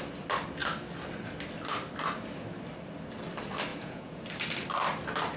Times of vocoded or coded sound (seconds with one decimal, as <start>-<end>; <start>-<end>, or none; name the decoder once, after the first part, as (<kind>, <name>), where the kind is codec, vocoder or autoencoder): 3.7-4.2 (vocoder, Vocos)